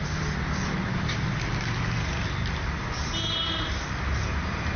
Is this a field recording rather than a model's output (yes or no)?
yes